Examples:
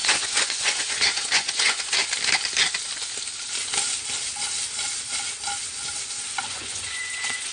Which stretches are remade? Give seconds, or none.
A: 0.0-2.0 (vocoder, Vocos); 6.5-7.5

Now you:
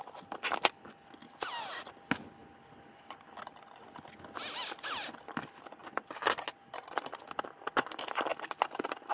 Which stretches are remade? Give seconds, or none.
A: none

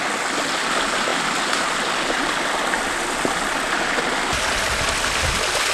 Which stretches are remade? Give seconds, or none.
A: none

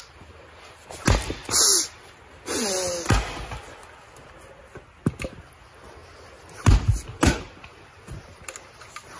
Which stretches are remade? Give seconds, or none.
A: none